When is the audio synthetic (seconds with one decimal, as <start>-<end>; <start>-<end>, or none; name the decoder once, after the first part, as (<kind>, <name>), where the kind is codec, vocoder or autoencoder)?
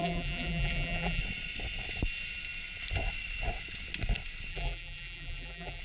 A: 0.0-1.2 (vocoder, BigVGAN v2); 4.5-5.8